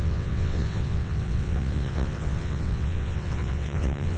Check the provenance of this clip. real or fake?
fake